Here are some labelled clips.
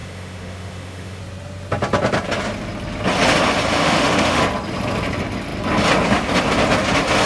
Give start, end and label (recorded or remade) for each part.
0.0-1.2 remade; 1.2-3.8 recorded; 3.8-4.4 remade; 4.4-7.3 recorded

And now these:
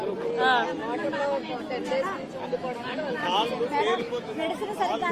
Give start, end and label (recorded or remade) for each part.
0.0-0.8 recorded; 0.8-1.5 remade; 1.5-2.5 recorded; 2.5-3.5 remade; 3.5-3.9 recorded; 3.9-4.4 remade; 4.4-5.1 recorded

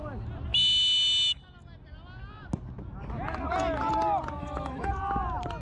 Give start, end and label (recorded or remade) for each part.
0.0-4.4 recorded; 4.4-4.9 remade; 4.9-5.6 recorded

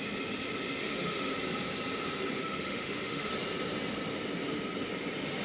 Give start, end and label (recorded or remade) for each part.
0.0-0.8 recorded; 0.8-1.3 remade; 1.3-2.4 recorded; 2.4-3.3 remade; 3.3-5.4 recorded

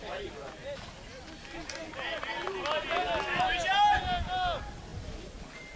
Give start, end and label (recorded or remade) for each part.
0.0-5.8 recorded